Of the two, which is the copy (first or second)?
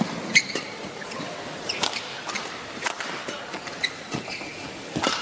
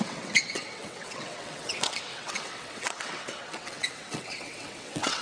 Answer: second